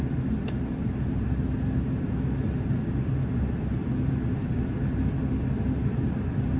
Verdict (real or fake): real